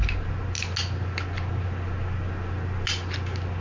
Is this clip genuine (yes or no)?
yes